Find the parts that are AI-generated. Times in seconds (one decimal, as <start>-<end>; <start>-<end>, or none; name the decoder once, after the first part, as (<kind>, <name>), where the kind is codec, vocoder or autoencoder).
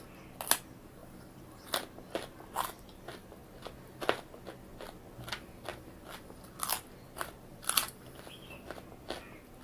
none